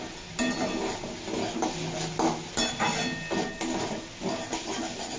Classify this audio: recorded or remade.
recorded